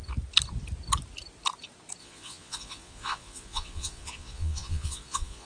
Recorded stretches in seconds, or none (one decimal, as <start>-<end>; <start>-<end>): 0.0-2.0

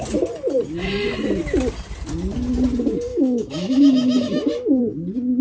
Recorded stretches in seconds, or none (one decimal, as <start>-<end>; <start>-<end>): 0.0-3.1; 4.8-5.4

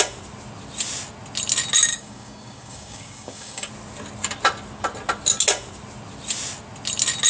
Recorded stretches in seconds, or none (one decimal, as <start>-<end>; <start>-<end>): 0.0-1.9; 3.7-7.3

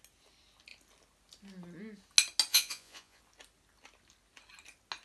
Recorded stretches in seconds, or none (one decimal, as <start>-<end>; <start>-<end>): 0.0-2.5; 3.2-5.0

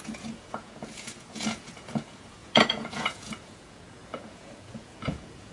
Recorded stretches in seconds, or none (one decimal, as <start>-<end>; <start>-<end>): none

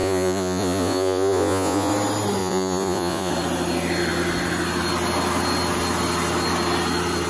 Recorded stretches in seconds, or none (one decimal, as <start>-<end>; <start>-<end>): 1.9-2.4; 3.3-7.3

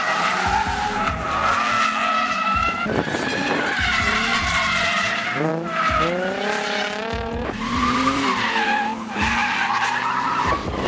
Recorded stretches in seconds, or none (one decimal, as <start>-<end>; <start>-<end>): 1.4-2.1; 5.5-7.0; 9.4-10.2

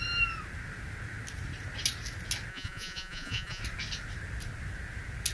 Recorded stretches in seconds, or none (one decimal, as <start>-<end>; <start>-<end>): 0.0-2.5; 3.6-5.3